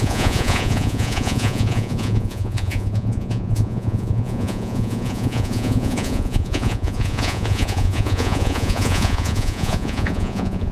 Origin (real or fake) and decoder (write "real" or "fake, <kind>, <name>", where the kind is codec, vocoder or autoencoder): fake, vocoder, Vocos